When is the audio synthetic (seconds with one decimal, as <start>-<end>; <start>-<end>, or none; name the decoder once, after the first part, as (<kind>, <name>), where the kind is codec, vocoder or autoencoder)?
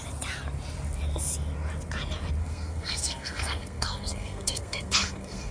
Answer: 2.4-5.5 (codec, SNAC)